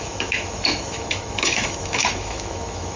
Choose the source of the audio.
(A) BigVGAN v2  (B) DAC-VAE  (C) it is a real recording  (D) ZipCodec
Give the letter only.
B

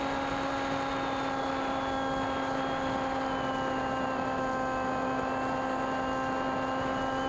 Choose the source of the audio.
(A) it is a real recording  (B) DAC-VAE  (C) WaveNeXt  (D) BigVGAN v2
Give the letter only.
A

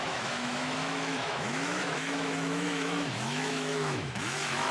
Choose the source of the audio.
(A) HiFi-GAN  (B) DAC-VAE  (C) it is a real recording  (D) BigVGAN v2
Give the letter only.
B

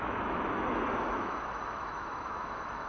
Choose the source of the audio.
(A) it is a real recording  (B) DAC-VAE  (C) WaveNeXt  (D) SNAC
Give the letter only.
B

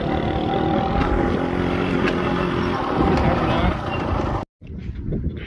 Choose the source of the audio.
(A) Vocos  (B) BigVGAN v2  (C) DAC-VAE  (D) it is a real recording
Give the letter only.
D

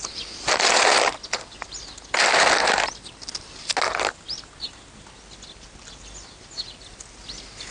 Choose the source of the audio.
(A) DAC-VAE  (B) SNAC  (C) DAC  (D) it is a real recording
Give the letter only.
D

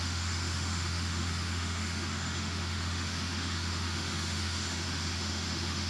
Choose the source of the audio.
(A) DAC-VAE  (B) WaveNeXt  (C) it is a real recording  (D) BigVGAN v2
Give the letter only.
A